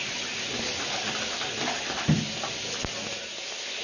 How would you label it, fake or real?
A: real